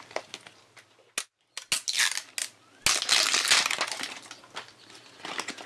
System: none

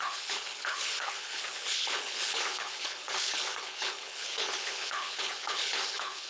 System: codec, HILCodec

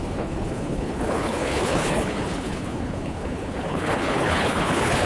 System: codec, HILCodec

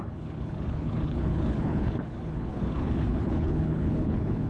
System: codec, HILCodec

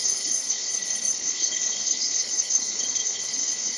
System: codec, HILCodec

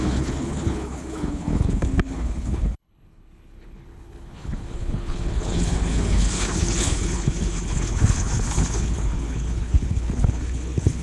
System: codec, HILCodec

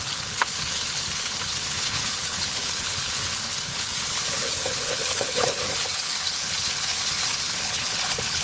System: codec, HILCodec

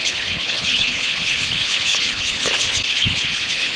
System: codec, HILCodec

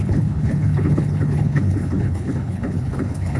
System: codec, HILCodec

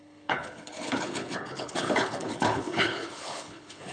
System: codec, HILCodec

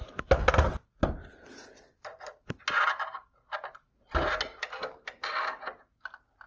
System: none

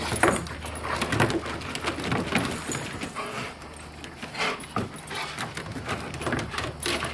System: none